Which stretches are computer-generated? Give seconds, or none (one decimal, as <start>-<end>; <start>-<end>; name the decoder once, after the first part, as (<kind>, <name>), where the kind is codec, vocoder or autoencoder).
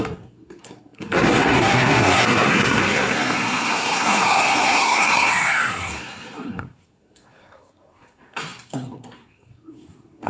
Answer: 0.0-10.3 (codec, SNAC)